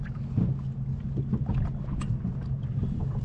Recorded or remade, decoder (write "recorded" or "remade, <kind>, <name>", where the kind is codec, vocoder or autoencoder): recorded